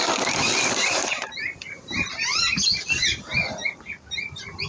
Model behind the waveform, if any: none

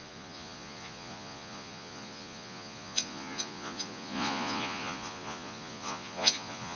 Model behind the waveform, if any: vocoder, Vocos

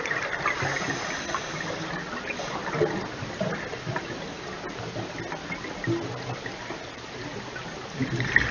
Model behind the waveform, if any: none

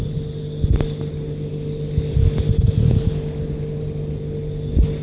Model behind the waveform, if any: none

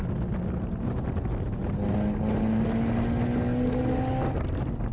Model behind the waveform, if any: none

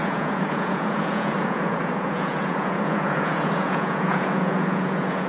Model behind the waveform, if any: vocoder, Vocos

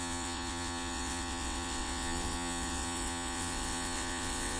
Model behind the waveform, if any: vocoder, WaveNeXt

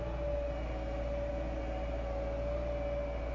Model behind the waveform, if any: none